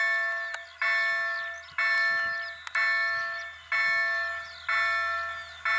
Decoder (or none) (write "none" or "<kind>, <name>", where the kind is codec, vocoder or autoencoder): none